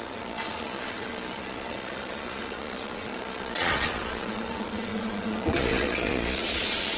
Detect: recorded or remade remade